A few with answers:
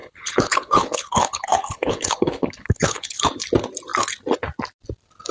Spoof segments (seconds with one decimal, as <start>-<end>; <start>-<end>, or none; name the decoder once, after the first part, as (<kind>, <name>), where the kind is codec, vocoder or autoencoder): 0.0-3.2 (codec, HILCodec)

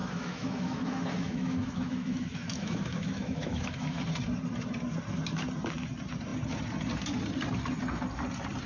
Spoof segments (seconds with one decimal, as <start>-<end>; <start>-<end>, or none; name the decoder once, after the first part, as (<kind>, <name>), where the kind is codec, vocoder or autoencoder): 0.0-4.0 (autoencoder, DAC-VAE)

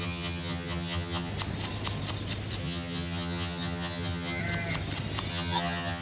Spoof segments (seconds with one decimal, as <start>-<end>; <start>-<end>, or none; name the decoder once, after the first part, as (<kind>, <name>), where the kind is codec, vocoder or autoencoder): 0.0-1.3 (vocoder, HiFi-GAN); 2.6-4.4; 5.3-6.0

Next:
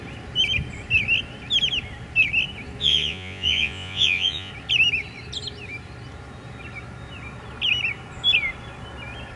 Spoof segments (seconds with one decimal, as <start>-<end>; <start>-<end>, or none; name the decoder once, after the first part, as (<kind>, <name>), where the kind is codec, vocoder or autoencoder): 2.8-4.5 (vocoder, Vocos)

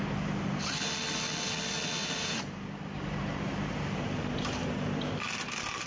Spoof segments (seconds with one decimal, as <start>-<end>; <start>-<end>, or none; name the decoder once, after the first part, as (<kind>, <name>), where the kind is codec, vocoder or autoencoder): 2.0-5.1 (vocoder, BigVGAN v2)

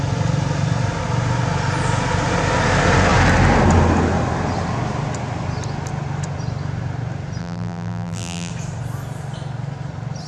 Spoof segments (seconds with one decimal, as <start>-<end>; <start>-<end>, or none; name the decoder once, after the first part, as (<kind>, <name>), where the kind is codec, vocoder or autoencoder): 7.4-8.5 (vocoder, BigVGAN v2)

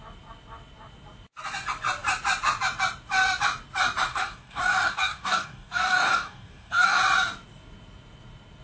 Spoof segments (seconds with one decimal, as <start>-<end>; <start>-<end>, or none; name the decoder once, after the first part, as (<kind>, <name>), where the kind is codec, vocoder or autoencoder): 4.1-7.0 (codec, DAC)